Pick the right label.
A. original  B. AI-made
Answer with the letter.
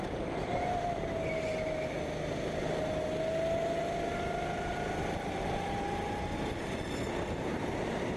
A